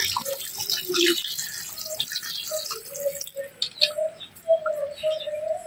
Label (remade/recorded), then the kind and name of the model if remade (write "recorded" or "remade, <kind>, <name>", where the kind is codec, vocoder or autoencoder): recorded